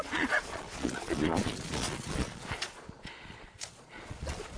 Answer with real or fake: fake